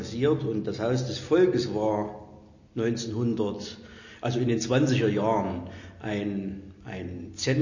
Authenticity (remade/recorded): recorded